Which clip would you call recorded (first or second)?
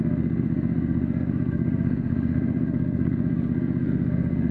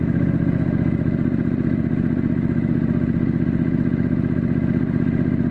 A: second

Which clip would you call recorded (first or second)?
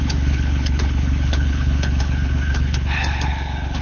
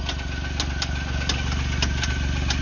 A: second